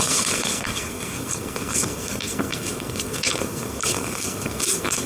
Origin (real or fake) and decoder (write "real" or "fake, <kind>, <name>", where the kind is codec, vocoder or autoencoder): fake, codec, SNAC